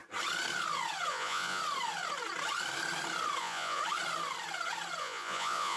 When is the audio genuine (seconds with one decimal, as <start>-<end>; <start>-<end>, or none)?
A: 0.0-1.1; 1.6-3.4; 3.8-5.0